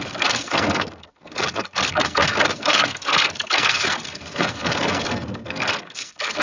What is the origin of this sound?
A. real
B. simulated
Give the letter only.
B